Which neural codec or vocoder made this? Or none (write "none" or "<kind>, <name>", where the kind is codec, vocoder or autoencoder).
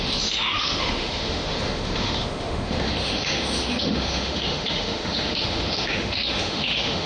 autoencoder, DAC-VAE